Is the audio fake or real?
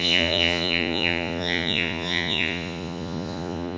fake